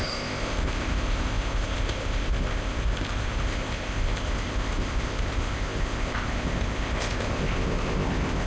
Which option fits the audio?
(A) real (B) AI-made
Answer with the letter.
B